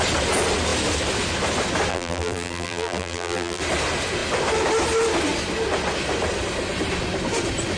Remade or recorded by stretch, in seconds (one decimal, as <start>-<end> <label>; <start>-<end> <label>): 0.0-1.9 recorded; 1.9-3.6 remade; 3.6-7.8 recorded